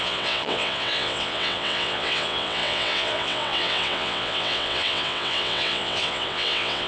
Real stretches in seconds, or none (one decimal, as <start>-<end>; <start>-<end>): none